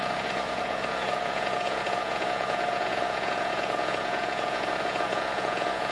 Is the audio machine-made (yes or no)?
yes